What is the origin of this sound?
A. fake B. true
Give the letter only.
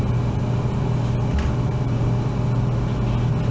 B